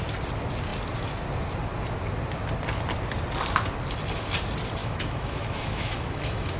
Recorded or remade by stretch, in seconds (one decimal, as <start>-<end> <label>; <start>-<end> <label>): 0.0-4.8 recorded; 4.8-6.6 remade